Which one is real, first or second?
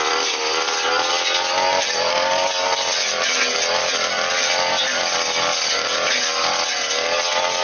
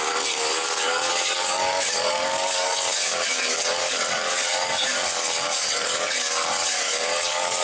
first